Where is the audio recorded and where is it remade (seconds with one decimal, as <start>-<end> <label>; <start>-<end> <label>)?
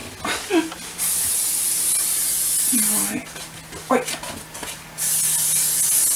0.0-6.2 recorded